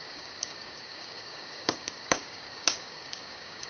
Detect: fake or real fake